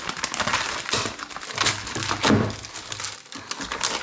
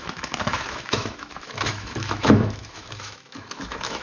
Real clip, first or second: first